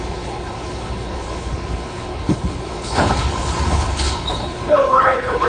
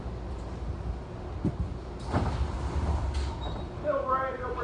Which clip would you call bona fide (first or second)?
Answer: second